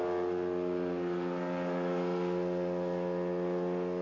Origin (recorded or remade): recorded